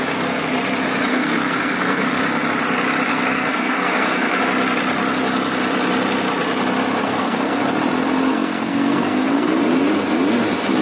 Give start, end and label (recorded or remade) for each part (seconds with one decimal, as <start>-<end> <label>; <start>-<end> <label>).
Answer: 0.0-1.1 recorded; 1.1-2.2 remade; 2.2-3.1 recorded; 3.1-4.4 remade; 4.4-7.0 recorded; 7.0-7.6 remade; 7.6-8.3 recorded; 8.3-9.6 remade; 9.6-10.8 recorded